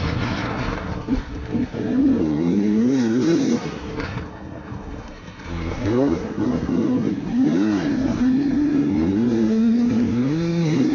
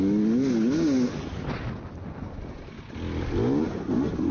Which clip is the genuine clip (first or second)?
second